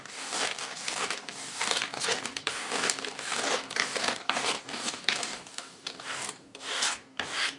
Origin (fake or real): fake